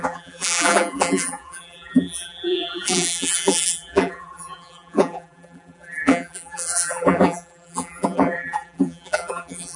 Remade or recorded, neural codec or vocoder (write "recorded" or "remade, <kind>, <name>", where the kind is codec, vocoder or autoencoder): remade, vocoder, BigVGAN v2